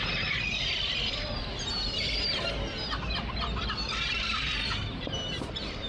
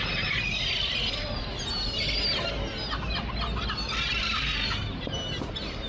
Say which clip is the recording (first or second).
second